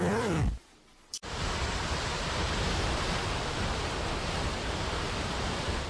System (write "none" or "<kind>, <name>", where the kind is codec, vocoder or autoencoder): none